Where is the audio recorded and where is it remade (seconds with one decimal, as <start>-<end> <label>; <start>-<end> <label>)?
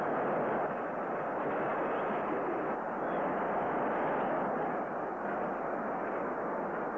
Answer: 0.0-7.0 recorded